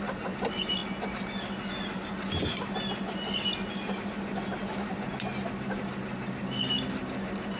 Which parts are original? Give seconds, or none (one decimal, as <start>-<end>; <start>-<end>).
0.0-7.6